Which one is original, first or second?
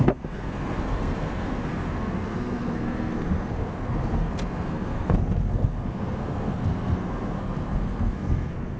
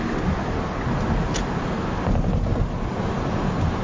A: second